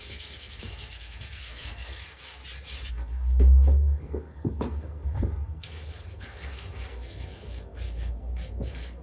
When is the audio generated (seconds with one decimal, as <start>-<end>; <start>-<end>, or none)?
0.0-2.4; 2.9-9.0